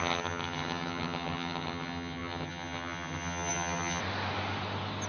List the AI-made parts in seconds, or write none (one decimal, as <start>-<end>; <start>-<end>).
0.0-4.0